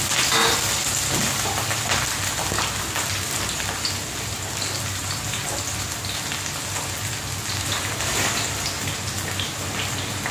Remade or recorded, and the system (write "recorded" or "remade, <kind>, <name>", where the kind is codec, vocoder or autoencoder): recorded